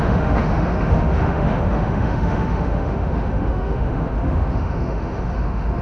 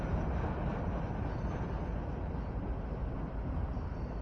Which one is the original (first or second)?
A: second